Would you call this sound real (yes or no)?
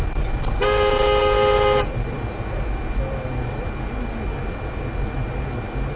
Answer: yes